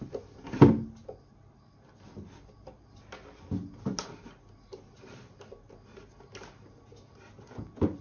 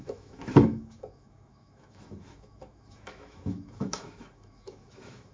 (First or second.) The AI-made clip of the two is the second